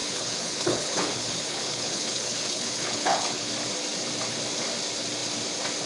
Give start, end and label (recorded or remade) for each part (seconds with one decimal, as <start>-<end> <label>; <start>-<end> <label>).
0.0-3.5 remade; 3.5-5.9 recorded